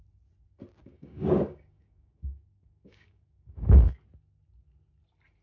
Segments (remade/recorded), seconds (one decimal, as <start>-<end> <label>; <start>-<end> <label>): 0.0-0.8 recorded; 0.8-4.0 remade; 4.0-5.4 recorded